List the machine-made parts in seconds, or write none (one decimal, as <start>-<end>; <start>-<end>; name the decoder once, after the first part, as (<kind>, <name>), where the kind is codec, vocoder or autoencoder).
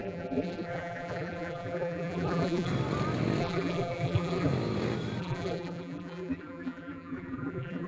0.0-2.7 (vocoder, BigVGAN v2); 3.4-4.5; 5.2-7.9